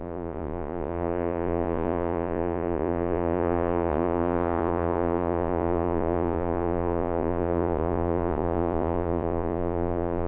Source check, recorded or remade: remade